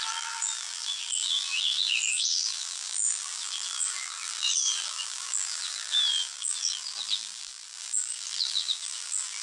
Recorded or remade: remade